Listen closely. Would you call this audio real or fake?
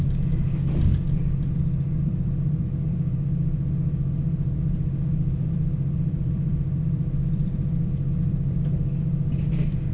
fake